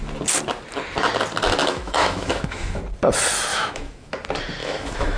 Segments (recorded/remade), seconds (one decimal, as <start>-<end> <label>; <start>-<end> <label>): 0.0-1.6 recorded; 1.6-2.8 remade; 2.8-3.5 recorded; 3.5-4.1 remade; 4.1-4.6 recorded; 4.6-5.2 remade